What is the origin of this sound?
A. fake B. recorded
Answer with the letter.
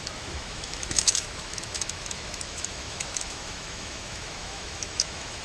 A